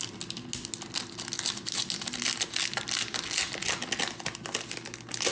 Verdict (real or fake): real